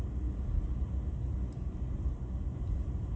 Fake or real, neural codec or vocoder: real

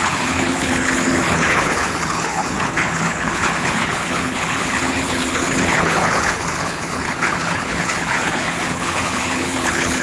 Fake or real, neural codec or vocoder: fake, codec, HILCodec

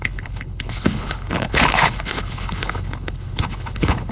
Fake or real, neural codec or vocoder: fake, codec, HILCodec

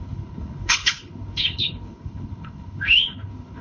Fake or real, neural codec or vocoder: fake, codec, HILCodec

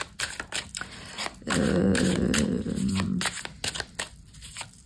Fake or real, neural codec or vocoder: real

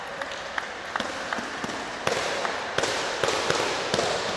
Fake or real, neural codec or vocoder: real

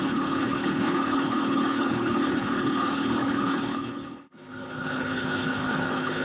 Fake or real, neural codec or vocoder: fake, codec, HILCodec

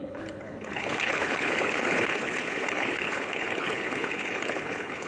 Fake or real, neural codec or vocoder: fake, codec, HILCodec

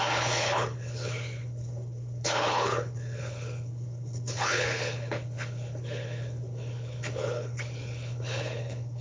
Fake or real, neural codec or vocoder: fake, codec, HILCodec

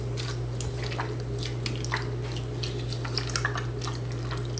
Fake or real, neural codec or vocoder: real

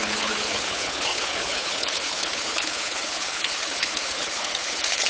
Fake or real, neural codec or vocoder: fake, codec, HILCodec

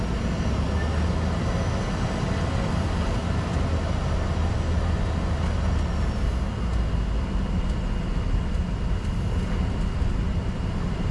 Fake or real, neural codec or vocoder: real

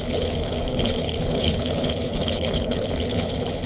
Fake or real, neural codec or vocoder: fake, codec, HILCodec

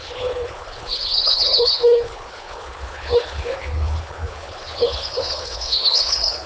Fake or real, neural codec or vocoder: fake, codec, HILCodec